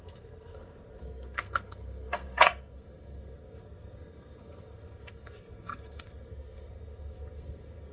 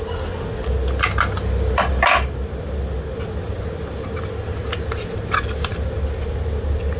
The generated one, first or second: first